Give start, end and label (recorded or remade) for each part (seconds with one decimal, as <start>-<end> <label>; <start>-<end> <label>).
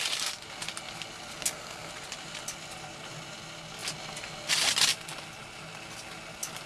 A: 0.0-1.4 recorded; 1.4-1.9 remade; 1.9-6.7 recorded